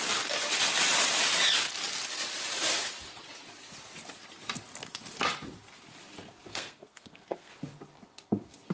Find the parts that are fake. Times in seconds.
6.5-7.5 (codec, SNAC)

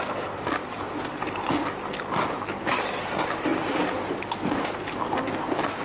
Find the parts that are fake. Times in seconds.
none

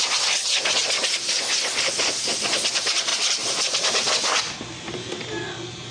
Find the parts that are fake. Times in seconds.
3.1-4.1 (vocoder, BigVGAN v2)

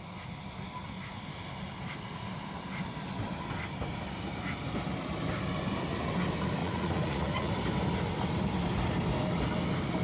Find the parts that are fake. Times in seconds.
6.6-7.5 (vocoder, Vocos)

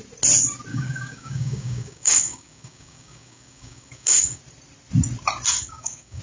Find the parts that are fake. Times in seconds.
0.7-4.4 (codec, DAC); 5.5-6.2